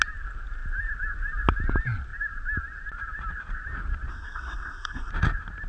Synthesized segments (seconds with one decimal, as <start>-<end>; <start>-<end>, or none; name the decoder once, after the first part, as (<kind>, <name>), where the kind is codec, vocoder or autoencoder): 4.1-5.1 (codec, SNAC)